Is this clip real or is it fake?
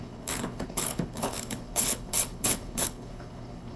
fake